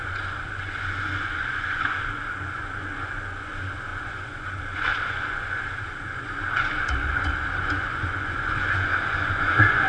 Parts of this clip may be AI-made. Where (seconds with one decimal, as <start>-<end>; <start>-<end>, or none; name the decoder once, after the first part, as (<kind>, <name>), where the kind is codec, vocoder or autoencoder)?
0.0-9.9 (vocoder, Vocos)